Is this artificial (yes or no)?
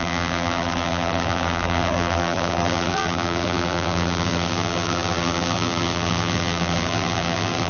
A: yes